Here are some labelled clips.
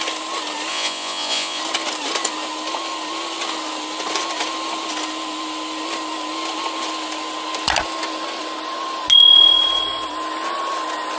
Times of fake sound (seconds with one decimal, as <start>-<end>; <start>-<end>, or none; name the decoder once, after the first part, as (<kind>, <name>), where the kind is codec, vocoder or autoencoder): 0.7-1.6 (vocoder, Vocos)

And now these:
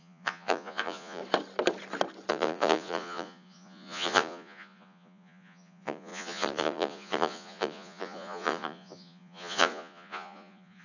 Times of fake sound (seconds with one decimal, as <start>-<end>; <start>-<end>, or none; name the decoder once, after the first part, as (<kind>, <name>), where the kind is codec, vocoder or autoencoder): 0.0-1.2 (vocoder, Vocos); 2.3-10.8

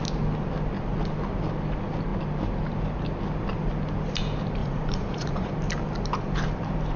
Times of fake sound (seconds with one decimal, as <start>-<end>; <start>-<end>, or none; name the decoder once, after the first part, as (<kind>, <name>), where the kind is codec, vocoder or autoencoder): 4.6-5.5 (vocoder, Vocos)